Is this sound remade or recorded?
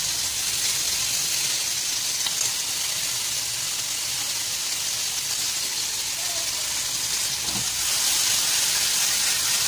recorded